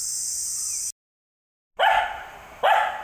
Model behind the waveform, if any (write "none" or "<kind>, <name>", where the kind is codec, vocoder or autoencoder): none